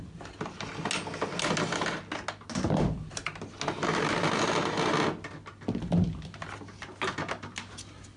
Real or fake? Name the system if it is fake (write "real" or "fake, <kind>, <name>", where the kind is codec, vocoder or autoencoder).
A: real